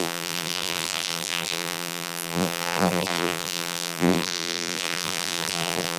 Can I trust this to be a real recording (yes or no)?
no